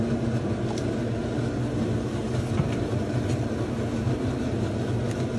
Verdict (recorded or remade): recorded